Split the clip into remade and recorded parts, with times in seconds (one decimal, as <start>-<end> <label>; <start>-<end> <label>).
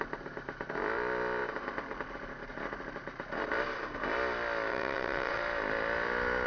0.0-4.7 recorded; 4.7-5.4 remade; 5.4-6.5 recorded